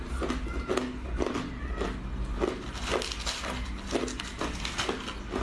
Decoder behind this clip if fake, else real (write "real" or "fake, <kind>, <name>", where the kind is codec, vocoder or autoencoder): real